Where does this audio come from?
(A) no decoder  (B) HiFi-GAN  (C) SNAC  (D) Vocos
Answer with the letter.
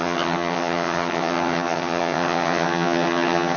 B